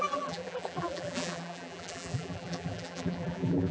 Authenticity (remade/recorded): remade